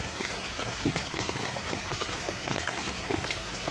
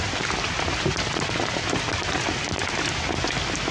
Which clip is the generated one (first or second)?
first